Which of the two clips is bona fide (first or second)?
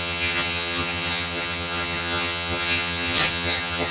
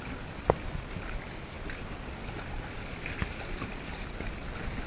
second